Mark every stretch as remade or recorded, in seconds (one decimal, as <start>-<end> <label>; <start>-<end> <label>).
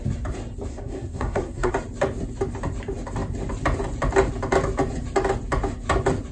0.0-0.7 recorded; 0.7-1.7 remade; 1.7-6.3 recorded